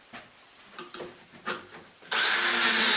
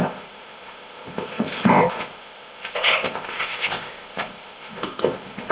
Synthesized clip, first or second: second